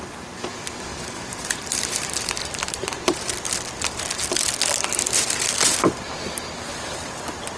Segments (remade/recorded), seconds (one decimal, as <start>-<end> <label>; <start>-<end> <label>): 0.0-0.9 recorded; 0.9-3.3 remade; 3.3-6.7 recorded; 6.7-7.6 remade